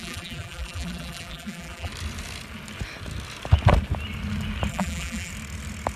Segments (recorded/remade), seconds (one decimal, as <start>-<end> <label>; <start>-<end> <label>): 0.0-1.9 remade; 1.9-4.7 recorded; 4.7-5.3 remade; 5.3-6.0 recorded